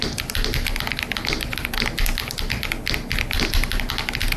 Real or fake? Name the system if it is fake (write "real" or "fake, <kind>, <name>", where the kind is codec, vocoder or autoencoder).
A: real